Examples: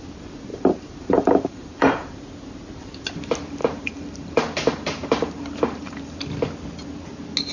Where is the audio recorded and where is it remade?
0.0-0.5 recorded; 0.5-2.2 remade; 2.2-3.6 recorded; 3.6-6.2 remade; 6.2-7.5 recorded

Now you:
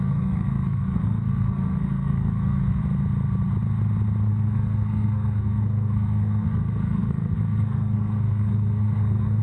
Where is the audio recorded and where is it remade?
0.0-2.8 remade; 2.8-4.3 recorded; 4.3-9.4 remade

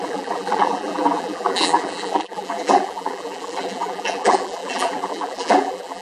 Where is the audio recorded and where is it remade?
0.0-6.0 remade